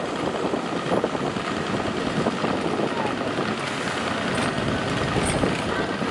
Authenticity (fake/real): real